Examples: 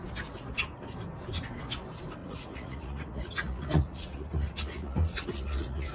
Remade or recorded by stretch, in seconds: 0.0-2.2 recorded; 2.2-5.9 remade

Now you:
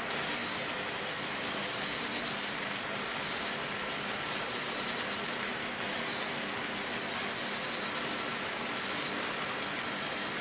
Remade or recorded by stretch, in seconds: 0.0-0.4 recorded; 0.4-1.1 remade; 1.1-5.5 recorded; 5.5-6.3 remade; 6.3-10.4 recorded

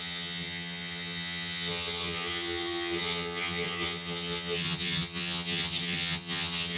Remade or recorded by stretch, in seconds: 0.0-6.8 remade

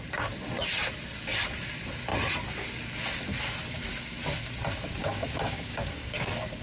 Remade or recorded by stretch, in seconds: 0.0-5.0 recorded; 5.0-6.6 remade

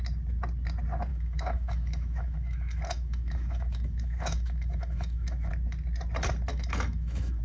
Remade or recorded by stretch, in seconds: 0.0-1.1 recorded; 1.1-5.5 remade; 5.5-6.5 recorded; 6.5-7.4 remade